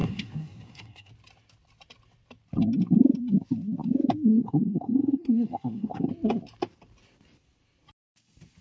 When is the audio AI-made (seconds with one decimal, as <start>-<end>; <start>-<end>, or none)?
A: 0.0-1.1; 4.3-6.1